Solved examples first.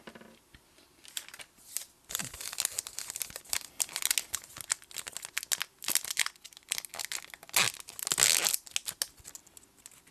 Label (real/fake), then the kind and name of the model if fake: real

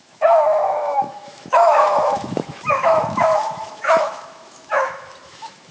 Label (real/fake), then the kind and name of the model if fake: fake, autoencoder, DAC-VAE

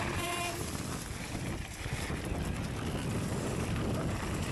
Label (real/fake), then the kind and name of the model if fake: real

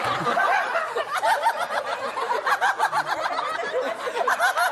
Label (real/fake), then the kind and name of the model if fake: real